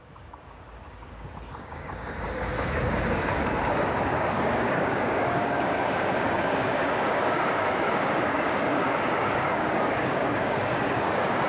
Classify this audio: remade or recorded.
remade